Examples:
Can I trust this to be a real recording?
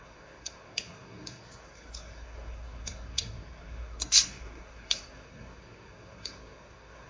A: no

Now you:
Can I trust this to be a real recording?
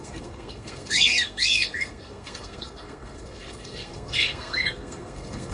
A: no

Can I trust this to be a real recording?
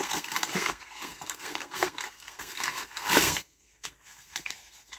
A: no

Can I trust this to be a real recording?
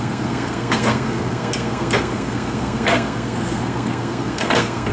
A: no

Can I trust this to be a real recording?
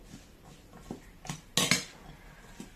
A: yes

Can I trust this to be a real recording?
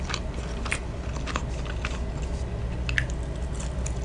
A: yes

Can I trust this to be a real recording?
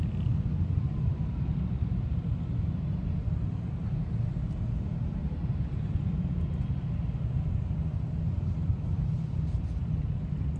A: yes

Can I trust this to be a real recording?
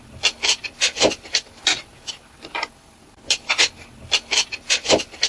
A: yes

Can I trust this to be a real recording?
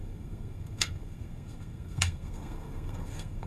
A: no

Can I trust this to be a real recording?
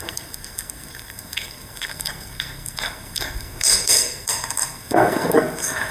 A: no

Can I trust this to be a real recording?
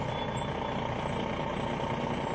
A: yes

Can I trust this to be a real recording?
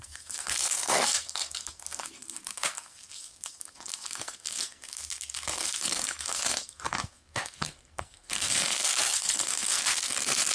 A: no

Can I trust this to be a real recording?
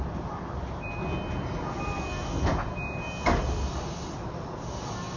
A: yes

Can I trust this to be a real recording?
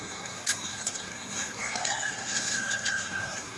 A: no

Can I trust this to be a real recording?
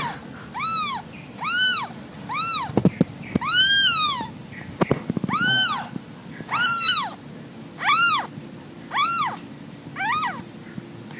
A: yes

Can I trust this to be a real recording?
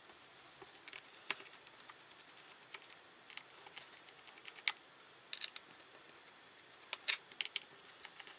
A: yes